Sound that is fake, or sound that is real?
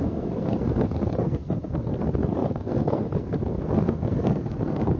fake